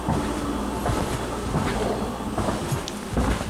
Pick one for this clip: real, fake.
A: real